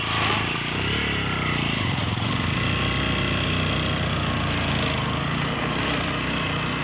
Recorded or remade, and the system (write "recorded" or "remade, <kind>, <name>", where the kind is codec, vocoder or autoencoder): recorded